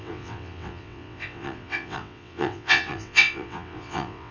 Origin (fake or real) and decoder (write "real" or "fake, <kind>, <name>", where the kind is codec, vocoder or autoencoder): fake, vocoder, WaveNeXt